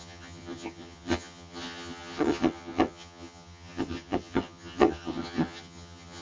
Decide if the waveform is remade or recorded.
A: remade